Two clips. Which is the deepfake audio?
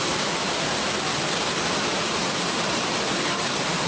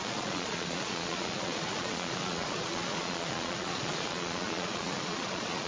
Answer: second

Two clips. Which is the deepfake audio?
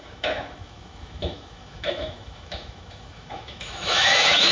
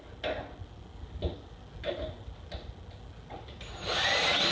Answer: first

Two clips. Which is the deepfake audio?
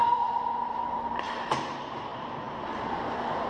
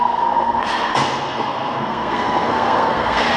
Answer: second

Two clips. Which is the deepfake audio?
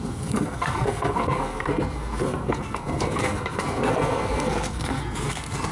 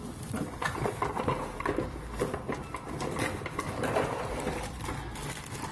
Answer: first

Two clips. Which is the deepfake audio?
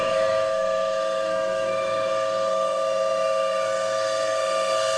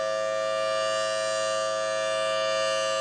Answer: first